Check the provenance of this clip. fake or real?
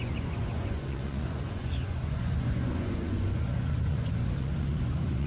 fake